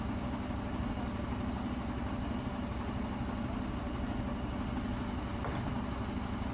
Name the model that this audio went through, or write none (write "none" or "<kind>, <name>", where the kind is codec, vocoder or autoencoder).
none